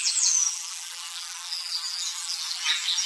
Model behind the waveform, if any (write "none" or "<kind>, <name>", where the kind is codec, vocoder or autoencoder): vocoder, BigVGAN v2